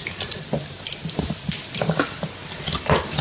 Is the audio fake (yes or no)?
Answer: no